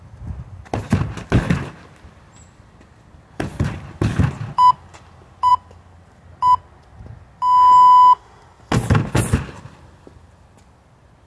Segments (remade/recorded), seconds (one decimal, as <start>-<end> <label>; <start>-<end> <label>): 0.0-11.3 recorded